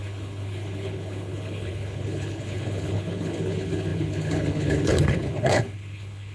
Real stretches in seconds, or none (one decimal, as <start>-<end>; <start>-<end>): none